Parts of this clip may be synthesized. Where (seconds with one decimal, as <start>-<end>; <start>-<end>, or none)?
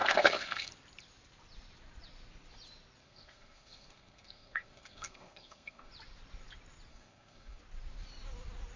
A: 0.0-0.7; 3.0-5.9; 6.9-7.6